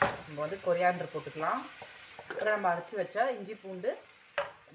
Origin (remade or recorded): recorded